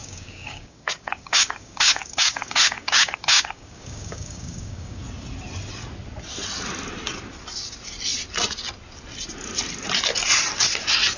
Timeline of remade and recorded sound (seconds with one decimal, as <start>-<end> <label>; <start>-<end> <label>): 0.0-5.0 remade; 5.0-11.2 recorded